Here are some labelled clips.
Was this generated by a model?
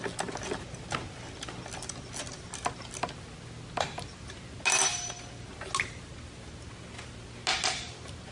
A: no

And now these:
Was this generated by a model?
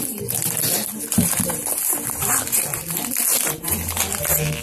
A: no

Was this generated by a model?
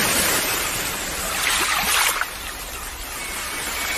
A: no